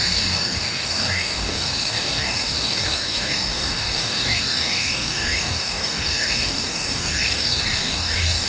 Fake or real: fake